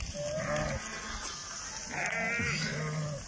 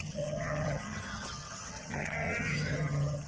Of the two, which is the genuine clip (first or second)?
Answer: first